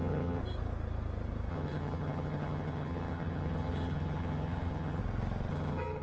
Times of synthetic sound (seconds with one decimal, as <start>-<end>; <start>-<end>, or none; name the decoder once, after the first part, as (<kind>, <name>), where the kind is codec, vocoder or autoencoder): 0.0-0.4 (vocoder, HiFi-GAN); 1.5-5.0; 5.5-6.0